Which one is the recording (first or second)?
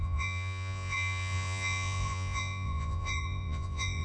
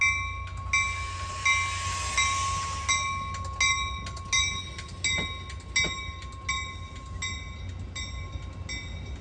second